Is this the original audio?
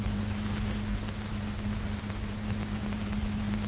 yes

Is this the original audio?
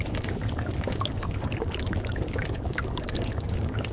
no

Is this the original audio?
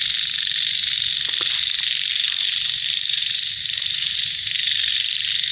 yes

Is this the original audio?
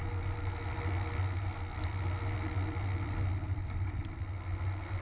yes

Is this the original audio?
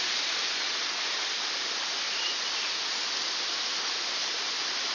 yes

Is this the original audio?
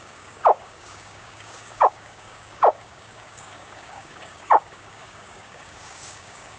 no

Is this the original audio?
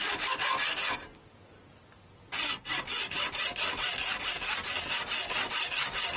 yes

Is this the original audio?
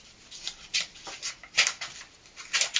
yes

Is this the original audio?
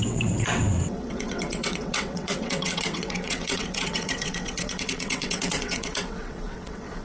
no